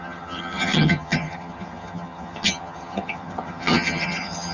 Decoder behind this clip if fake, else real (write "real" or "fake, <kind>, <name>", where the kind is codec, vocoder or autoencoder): fake, vocoder, HiFi-GAN